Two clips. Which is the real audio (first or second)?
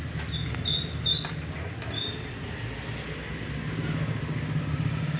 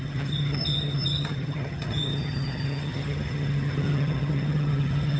first